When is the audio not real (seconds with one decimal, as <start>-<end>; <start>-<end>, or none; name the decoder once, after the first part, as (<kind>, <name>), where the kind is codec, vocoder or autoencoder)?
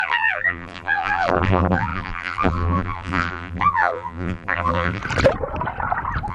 0.0-5.0 (vocoder, BigVGAN v2)